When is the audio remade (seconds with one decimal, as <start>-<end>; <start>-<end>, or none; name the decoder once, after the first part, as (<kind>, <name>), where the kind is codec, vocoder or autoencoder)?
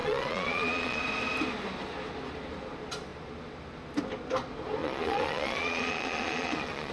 0.0-1.0 (vocoder, Vocos); 4.8-6.9